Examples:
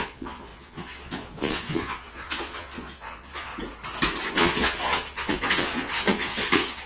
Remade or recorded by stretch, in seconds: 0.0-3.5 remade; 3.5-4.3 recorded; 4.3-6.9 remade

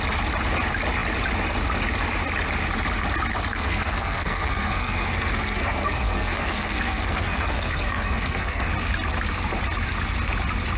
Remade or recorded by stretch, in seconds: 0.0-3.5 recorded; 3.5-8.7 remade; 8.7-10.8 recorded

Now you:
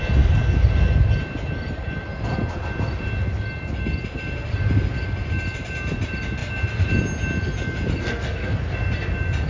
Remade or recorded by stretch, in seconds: 0.0-8.0 recorded; 8.0-8.6 remade; 8.6-9.5 recorded

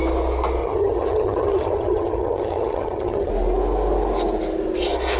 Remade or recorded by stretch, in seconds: 0.0-0.6 recorded; 0.6-3.3 remade; 3.3-5.2 recorded

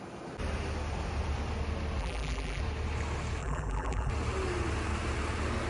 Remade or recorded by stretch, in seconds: 0.0-2.0 recorded; 2.0-2.6 remade; 2.6-3.4 recorded; 3.4-4.1 remade; 4.1-5.7 recorded

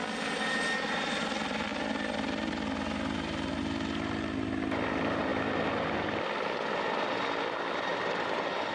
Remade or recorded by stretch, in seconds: 0.0-8.7 recorded